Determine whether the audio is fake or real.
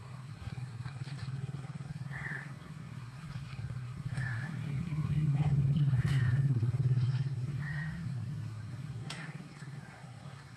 fake